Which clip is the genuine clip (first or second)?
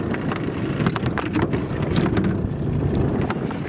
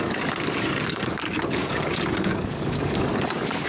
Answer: first